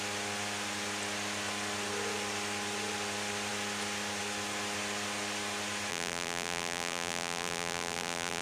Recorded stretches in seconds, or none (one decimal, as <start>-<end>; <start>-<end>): 0.0-5.9